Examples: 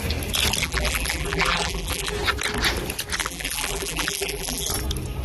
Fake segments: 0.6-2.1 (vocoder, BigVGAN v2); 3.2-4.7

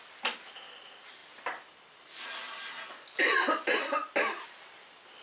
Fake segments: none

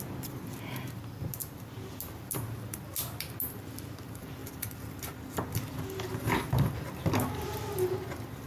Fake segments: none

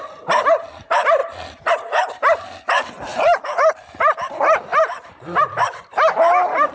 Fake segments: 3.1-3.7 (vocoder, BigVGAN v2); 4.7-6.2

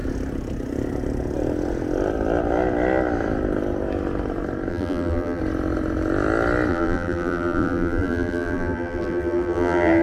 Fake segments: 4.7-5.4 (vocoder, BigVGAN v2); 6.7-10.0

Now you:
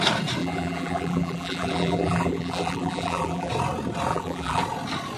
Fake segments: 0.4-3.5 (vocoder, BigVGAN v2); 4.1-4.6

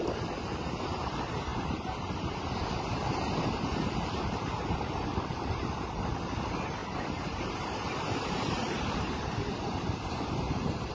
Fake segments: 0.0-10.9 (vocoder, BigVGAN v2)